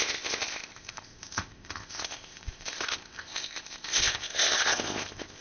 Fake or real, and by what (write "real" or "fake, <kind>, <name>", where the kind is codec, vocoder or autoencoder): fake, codec, ZipCodec